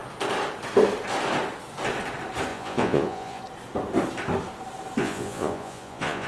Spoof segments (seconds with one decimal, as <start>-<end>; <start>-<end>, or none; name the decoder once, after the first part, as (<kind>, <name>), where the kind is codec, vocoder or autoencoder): 2.5-3.4 (vocoder, Vocos); 5.0-6.3